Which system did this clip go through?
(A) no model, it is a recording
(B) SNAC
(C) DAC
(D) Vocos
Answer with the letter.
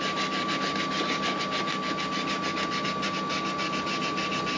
A